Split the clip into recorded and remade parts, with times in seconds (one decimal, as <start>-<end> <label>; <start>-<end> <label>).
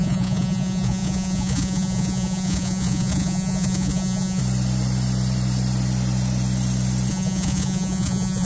0.0-4.4 remade; 4.4-7.1 recorded; 7.1-8.4 remade